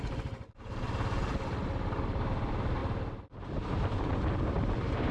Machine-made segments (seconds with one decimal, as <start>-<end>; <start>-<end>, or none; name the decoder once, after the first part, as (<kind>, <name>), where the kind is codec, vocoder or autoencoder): 0.0-1.3 (vocoder, BigVGAN v2); 2.3-5.1